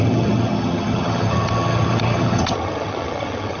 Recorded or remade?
remade